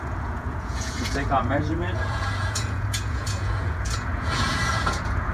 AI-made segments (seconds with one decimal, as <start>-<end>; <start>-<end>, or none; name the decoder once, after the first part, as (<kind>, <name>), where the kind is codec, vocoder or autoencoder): 0.0-5.3 (vocoder, Vocos)